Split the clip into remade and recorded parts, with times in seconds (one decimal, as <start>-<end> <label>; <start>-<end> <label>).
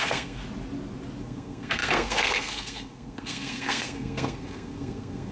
0.0-0.4 remade; 0.4-1.2 recorded; 1.2-5.3 remade